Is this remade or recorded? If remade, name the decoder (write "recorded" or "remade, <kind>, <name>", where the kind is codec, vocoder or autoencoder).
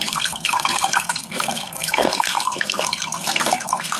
remade, codec, SNAC